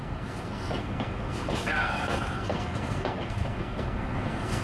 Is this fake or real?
fake